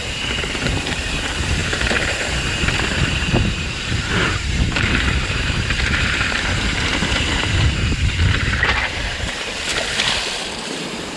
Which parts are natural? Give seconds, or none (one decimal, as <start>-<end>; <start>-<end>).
9.7-10.6